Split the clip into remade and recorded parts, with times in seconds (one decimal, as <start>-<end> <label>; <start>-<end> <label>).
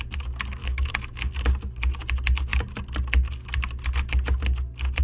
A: 0.0-0.6 recorded; 0.6-1.2 remade; 1.2-5.0 recorded